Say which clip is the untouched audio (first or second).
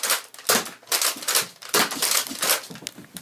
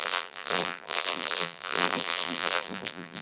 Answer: first